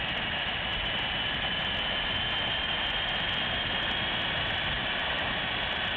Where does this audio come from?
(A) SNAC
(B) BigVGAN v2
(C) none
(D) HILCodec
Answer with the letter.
C